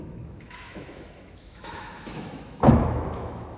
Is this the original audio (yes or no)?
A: no